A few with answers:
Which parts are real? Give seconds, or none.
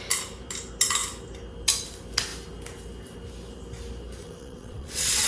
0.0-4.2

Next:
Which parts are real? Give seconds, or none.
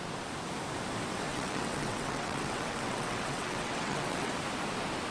0.0-1.3; 4.3-5.1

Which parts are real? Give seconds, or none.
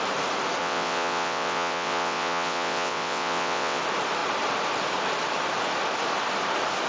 0.0-0.6; 3.8-6.9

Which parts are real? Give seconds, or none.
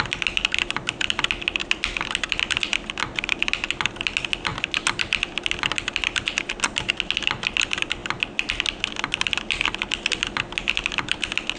0.0-11.6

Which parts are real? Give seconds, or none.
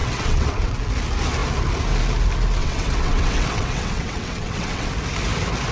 0.8-2.6; 4.9-5.7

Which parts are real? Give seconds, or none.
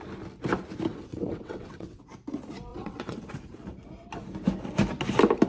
0.0-0.9; 2.0-2.7; 3.3-5.5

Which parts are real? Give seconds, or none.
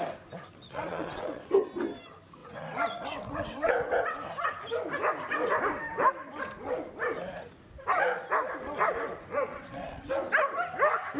0.0-0.6; 1.7-2.4; 3.7-9.5; 10.1-11.2